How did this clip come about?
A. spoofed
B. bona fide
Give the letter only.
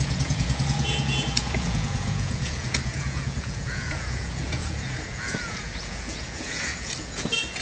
A